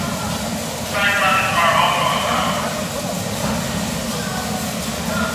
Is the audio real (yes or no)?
yes